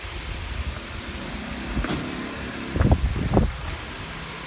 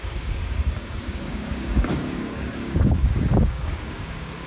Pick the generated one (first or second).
second